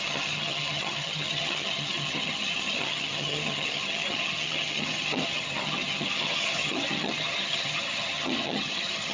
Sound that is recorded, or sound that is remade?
remade